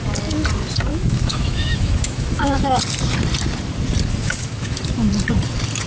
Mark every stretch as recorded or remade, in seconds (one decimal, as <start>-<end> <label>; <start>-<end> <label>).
0.0-0.9 recorded; 0.9-2.8 remade; 2.8-4.2 recorded; 4.2-5.1 remade; 5.1-5.9 recorded